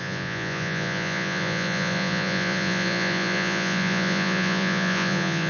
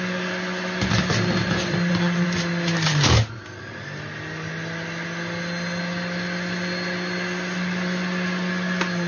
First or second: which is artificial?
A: first